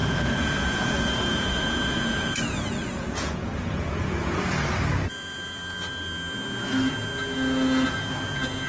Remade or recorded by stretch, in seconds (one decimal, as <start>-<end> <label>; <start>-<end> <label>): 0.0-4.4 remade; 4.4-8.7 recorded